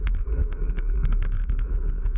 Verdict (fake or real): fake